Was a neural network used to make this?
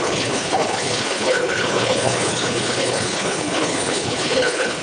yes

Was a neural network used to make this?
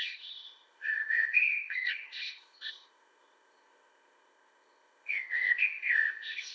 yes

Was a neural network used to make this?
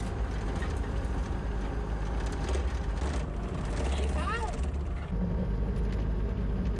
no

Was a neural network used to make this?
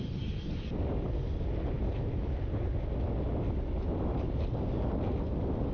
no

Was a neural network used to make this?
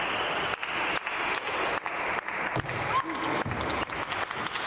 no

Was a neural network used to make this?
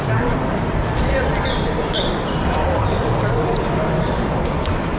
yes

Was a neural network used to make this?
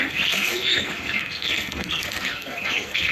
yes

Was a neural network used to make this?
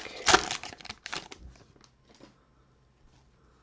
no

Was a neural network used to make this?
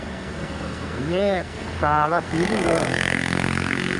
yes